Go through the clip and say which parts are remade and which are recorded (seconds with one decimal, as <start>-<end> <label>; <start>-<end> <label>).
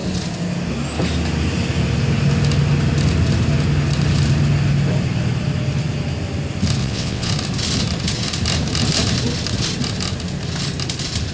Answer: 0.0-6.8 recorded; 6.8-7.3 remade; 7.3-11.3 recorded